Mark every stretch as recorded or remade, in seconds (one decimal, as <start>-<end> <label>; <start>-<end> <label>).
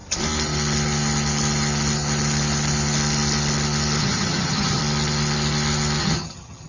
0.0-4.0 recorded; 4.0-4.8 remade; 4.8-6.0 recorded; 6.0-6.7 remade